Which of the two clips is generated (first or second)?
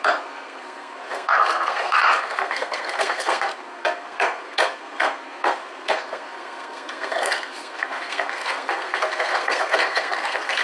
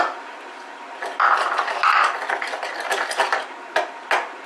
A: first